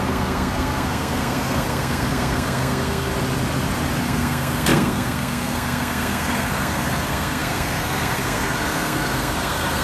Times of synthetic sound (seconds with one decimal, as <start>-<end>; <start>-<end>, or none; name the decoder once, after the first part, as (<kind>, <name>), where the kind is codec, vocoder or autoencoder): 0.0-3.1 (codec, SNAC); 4.0-9.8